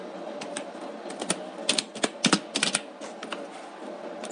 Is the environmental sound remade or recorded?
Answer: recorded